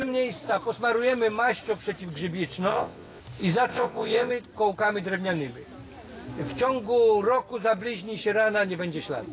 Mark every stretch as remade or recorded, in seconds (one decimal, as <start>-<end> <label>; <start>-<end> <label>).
0.0-2.7 recorded; 2.7-3.2 remade; 3.2-3.7 recorded; 3.7-4.3 remade; 4.3-9.3 recorded